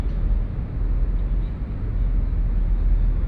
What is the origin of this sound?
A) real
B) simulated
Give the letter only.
A